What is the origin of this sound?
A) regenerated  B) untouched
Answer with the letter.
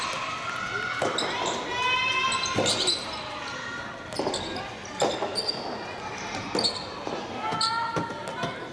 B